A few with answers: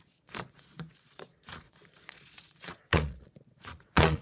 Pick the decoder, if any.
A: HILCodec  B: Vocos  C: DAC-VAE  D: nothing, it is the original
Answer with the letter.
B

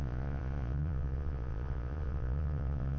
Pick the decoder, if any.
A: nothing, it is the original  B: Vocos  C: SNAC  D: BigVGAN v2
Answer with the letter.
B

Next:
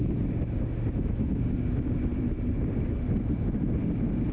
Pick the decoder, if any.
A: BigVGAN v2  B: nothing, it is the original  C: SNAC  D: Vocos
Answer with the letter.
B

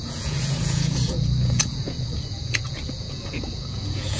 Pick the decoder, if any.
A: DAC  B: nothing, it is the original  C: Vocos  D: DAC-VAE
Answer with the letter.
C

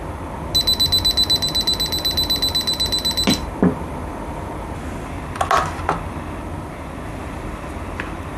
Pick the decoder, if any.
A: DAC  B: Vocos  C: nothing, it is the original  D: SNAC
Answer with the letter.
C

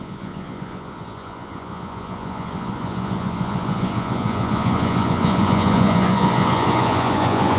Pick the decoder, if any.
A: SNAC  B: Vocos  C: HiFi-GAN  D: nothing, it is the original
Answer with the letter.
B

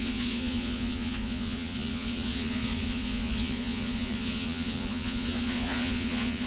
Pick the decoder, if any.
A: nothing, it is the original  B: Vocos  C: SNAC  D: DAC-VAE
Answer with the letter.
B